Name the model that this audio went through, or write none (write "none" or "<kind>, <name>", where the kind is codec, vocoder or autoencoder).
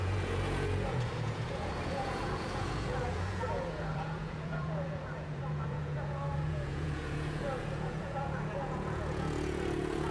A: vocoder, Vocos